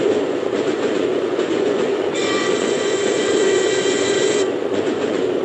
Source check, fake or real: fake